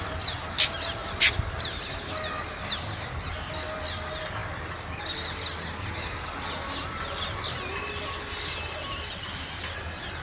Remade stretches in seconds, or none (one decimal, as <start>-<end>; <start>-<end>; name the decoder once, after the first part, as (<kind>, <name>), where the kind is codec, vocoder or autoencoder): 1.0-1.8 (vocoder, BigVGAN v2)